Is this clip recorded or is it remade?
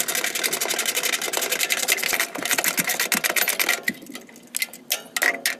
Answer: recorded